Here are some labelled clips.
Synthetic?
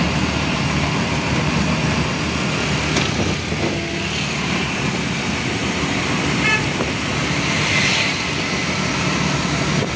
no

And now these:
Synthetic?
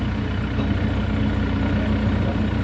no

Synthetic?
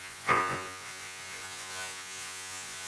yes